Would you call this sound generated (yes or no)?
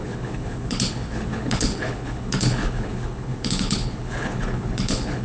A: yes